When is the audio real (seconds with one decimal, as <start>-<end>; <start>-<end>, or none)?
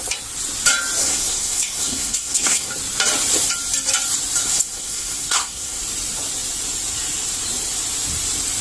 0.0-1.0; 2.7-4.4; 5.8-8.6